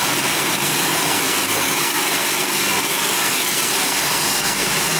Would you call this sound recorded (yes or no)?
no